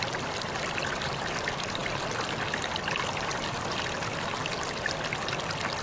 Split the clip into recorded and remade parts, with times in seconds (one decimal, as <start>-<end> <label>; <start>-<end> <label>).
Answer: 0.0-5.8 recorded